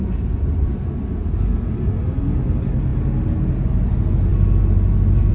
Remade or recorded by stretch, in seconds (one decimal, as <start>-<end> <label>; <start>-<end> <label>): 0.0-5.3 recorded